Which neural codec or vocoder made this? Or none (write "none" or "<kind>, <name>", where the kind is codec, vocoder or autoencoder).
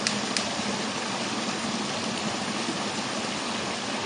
none